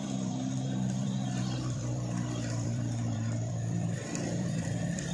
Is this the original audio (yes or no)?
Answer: no